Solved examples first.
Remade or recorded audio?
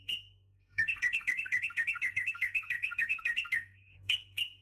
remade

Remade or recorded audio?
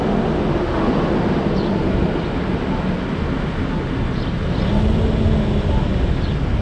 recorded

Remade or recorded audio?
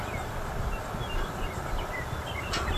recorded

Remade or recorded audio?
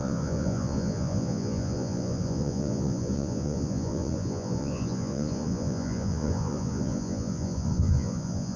remade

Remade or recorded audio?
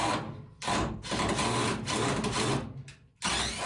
recorded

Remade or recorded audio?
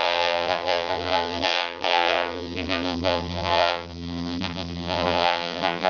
remade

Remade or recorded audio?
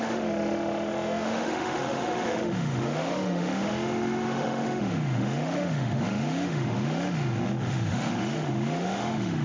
remade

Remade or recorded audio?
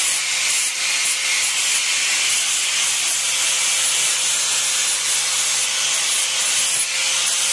recorded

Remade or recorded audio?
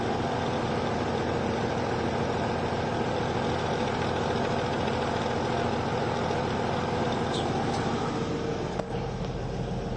recorded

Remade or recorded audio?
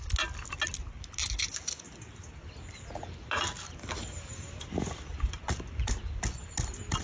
recorded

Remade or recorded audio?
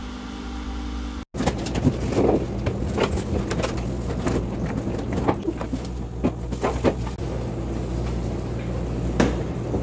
recorded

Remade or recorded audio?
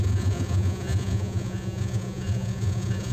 remade